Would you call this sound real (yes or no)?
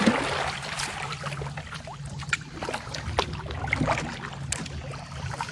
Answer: yes